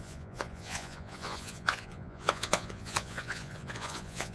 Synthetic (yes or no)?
yes